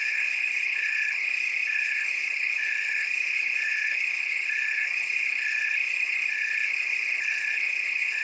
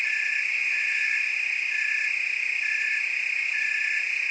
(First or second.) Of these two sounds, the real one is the second